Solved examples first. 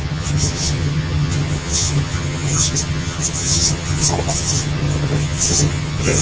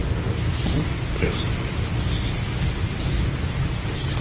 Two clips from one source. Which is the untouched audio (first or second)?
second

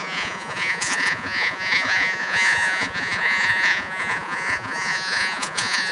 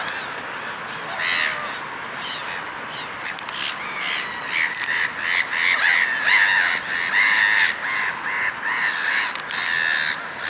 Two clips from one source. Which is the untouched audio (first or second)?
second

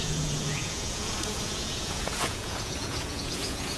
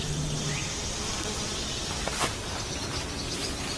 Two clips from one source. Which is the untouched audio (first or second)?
second